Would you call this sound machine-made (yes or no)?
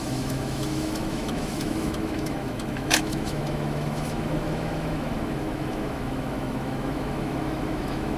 yes